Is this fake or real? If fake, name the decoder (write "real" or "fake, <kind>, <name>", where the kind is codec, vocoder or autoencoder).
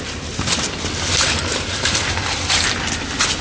real